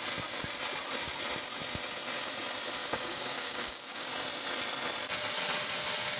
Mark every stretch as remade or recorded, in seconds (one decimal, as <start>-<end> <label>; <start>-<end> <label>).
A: 0.0-2.8 recorded; 2.8-4.1 remade; 4.1-6.2 recorded